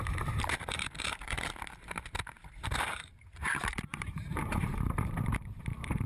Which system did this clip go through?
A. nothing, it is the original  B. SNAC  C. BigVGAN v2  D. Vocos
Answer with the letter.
C